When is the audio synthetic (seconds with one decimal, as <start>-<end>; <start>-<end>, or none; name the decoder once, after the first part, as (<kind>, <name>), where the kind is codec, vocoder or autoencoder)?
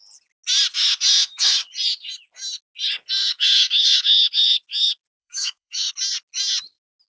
1.1-1.7 (autoencoder, DAC-VAE); 3.2-4.3; 5.2-5.9